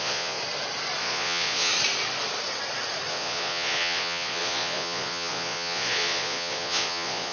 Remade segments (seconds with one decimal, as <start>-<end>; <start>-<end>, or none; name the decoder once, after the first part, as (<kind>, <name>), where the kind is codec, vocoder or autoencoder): 0.0-0.4 (vocoder, Vocos); 1.0-1.7; 3.1-7.3